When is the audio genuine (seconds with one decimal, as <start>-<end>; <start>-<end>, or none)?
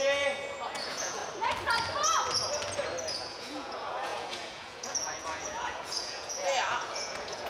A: 1.2-3.1